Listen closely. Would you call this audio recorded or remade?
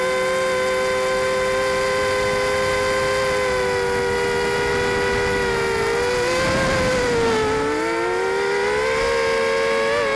recorded